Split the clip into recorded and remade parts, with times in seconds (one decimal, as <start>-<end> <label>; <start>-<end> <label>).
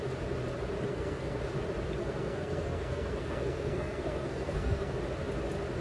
0.0-0.9 recorded; 0.9-1.4 remade; 1.4-2.0 recorded; 2.0-5.0 remade; 5.0-5.8 recorded